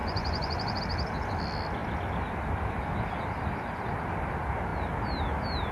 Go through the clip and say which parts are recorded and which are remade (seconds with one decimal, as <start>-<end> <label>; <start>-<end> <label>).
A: 0.0-0.8 remade; 0.8-5.7 recorded